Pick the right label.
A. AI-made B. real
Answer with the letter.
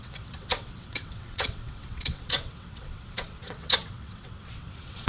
A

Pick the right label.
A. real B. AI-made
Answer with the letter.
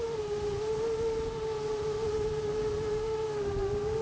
A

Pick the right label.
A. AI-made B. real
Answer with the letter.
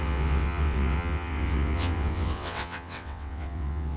A